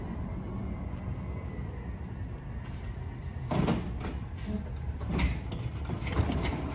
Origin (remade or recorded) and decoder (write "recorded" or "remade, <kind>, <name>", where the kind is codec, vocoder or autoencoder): recorded